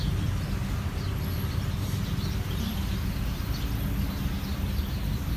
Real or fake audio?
real